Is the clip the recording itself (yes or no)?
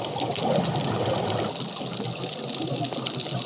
yes